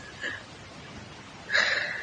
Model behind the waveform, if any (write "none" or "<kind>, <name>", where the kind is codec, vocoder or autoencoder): none